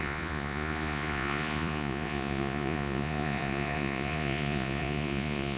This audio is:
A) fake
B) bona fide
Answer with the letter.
A